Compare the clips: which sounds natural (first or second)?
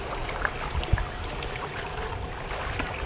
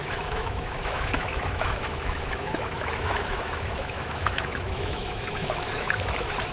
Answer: first